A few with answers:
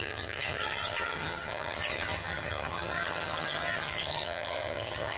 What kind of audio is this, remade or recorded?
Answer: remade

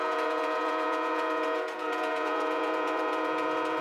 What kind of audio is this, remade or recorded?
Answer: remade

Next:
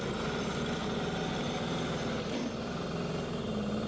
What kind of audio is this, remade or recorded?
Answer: recorded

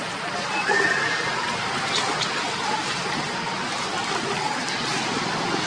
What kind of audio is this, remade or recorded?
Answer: recorded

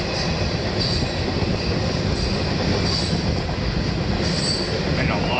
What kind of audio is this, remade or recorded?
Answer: recorded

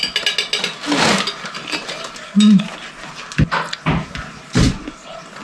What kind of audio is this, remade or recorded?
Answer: recorded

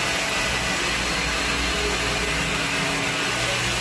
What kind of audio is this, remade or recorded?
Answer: recorded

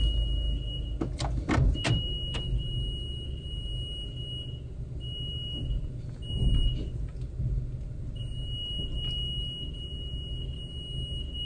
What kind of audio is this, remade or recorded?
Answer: recorded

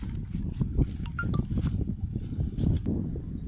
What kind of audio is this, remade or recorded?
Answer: recorded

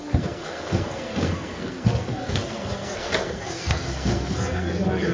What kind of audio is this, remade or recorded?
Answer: remade